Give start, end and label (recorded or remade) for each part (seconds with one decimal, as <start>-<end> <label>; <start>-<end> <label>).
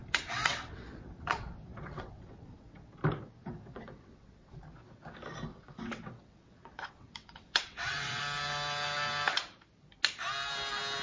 0.0-3.0 remade; 3.0-3.4 recorded; 3.4-4.6 remade; 4.6-5.5 recorded; 5.5-8.2 remade; 8.2-11.0 recorded